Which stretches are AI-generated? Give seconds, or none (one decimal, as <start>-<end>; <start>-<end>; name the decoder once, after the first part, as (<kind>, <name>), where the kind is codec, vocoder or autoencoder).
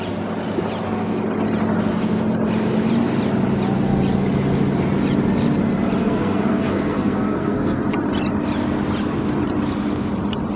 6.0-7.8 (codec, SNAC)